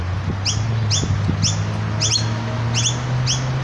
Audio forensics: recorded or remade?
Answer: recorded